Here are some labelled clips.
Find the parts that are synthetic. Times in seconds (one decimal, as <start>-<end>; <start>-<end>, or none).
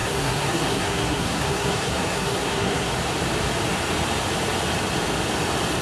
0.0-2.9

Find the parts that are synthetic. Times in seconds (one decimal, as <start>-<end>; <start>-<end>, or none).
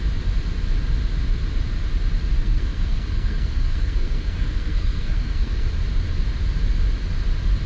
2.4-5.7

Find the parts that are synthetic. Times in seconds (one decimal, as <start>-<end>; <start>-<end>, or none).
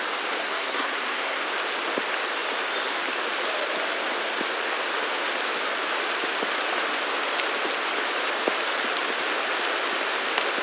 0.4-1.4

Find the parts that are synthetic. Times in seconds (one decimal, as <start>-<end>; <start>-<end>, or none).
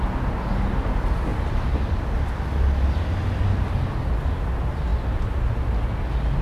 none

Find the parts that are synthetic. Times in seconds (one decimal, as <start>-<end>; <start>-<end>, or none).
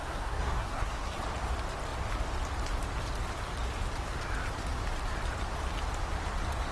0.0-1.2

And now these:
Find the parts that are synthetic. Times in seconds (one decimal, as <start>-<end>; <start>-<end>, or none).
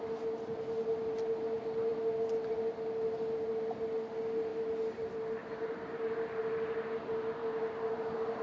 none